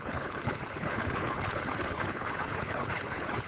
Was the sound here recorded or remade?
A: remade